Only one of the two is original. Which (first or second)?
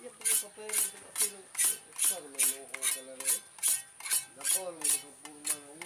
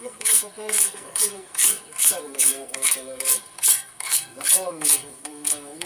first